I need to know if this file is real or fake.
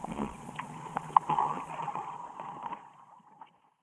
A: fake